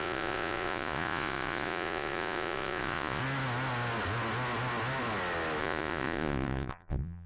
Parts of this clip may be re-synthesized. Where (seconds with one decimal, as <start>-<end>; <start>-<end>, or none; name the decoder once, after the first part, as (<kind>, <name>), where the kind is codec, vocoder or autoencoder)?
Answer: 0.0-3.2 (vocoder, Vocos); 5.6-7.3